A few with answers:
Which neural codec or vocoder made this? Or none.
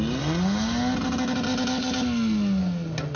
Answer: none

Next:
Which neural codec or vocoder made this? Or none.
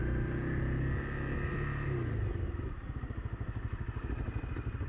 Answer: none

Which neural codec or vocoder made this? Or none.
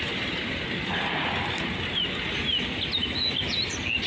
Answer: none